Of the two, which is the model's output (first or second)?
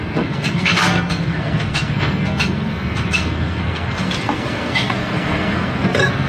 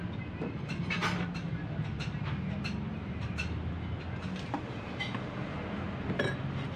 first